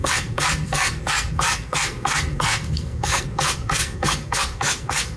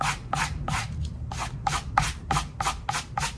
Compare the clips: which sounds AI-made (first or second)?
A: first